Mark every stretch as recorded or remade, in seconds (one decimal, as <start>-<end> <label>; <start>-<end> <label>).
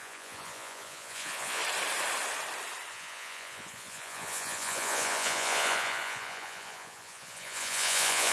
0.0-1.6 remade; 1.6-2.9 recorded; 2.9-8.3 remade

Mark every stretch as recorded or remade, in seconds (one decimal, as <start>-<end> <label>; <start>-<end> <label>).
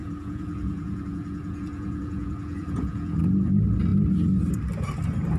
0.0-3.2 remade; 3.2-5.4 recorded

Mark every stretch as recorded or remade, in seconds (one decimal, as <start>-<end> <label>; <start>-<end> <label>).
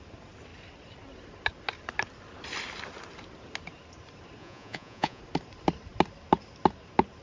0.0-4.4 recorded; 4.4-5.2 remade; 5.2-7.2 recorded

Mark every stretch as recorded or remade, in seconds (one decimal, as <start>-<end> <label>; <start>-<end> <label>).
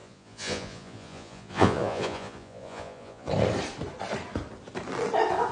0.0-3.3 remade; 3.3-5.5 recorded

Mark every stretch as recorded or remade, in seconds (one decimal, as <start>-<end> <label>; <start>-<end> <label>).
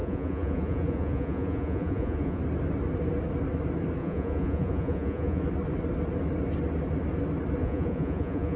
0.0-2.4 remade; 2.4-4.0 recorded; 4.0-5.4 remade; 5.4-7.6 recorded; 7.6-8.6 remade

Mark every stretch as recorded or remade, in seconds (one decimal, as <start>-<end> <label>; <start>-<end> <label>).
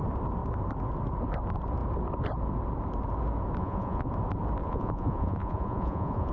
0.0-3.6 recorded; 3.6-4.1 remade; 4.1-4.6 recorded; 4.6-6.3 remade